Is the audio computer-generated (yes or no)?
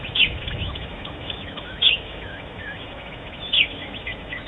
yes